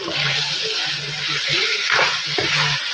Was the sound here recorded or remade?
recorded